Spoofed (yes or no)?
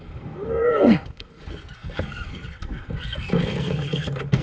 yes